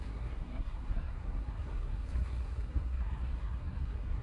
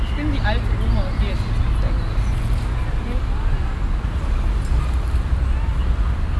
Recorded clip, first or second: second